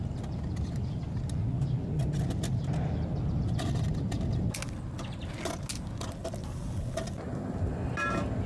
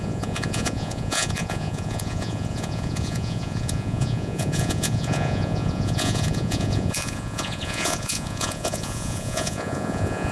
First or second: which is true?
first